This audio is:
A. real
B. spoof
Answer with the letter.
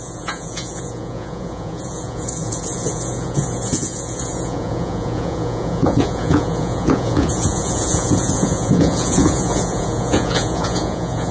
B